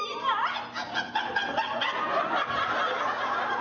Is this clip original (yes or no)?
yes